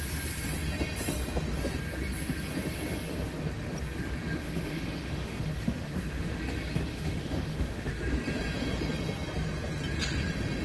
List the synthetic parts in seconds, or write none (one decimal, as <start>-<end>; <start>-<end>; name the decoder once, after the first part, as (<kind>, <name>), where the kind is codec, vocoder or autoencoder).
4.4-6.4 (autoencoder, DAC-VAE); 6.9-7.9